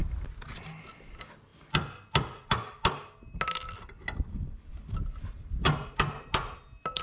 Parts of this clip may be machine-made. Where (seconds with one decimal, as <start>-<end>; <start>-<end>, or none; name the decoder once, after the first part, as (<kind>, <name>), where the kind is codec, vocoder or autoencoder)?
none